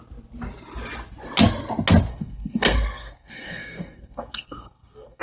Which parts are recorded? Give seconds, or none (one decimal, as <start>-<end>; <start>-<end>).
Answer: 0.0-2.1